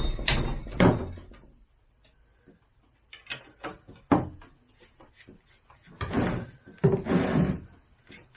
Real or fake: real